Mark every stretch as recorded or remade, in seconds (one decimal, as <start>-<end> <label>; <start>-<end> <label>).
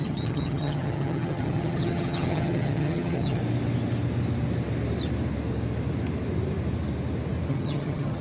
0.0-3.4 remade; 3.4-7.5 recorded; 7.5-8.2 remade